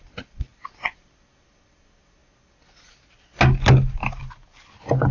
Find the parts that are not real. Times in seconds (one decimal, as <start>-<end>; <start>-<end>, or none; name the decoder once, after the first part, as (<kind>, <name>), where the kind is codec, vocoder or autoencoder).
none